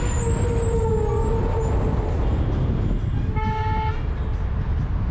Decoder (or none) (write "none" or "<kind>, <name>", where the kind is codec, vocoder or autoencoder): none